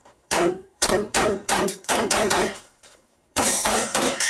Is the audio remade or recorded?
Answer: remade